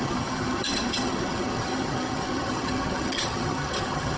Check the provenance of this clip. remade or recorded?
remade